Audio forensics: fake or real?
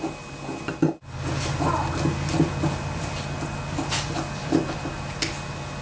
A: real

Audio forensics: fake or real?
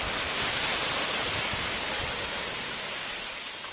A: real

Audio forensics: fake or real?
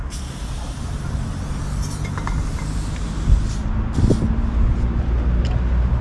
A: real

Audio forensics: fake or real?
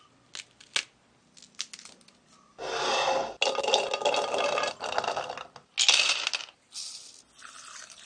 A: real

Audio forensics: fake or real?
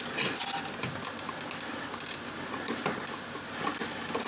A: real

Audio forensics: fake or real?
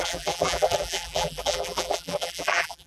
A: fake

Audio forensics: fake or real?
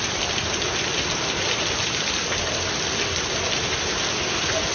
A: real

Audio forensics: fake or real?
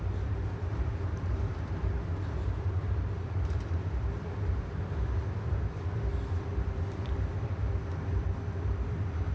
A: fake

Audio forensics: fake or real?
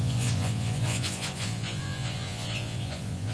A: fake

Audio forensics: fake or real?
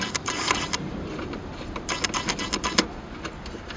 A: real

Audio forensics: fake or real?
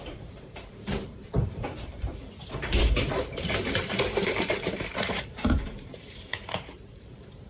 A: fake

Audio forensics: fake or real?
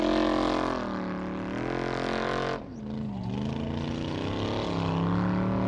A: real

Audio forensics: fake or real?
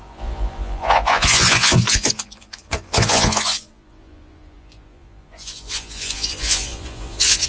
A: fake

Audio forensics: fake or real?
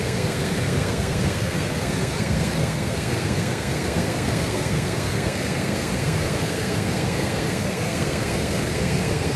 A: fake